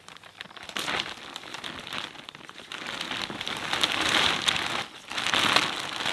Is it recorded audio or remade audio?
recorded